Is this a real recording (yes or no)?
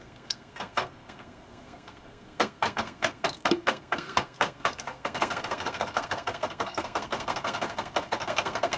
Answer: no